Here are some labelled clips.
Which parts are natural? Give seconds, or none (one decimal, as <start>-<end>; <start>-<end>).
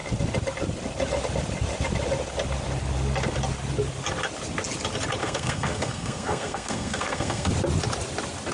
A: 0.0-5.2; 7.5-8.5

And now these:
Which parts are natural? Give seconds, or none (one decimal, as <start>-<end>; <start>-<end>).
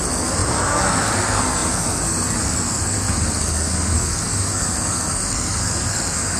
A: none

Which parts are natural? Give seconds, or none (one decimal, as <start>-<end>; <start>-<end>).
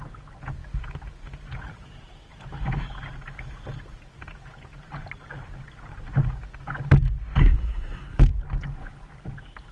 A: 0.0-7.4; 8.2-9.7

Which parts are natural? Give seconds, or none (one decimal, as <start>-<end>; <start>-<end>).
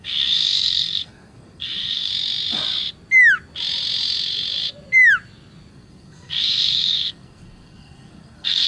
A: 2.1-5.7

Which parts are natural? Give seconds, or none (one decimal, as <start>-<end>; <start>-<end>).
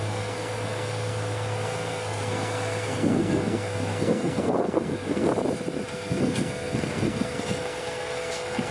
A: 5.3-5.9